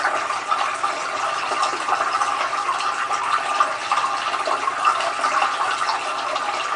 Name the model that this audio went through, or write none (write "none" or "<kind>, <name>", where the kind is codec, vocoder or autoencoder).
none